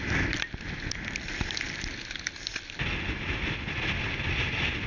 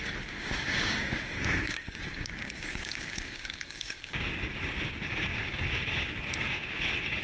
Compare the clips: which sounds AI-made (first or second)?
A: second